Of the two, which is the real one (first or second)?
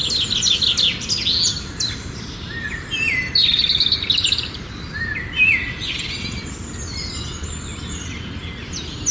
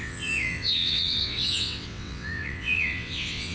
first